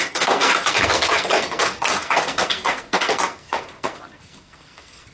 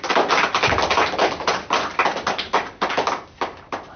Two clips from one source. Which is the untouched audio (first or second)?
second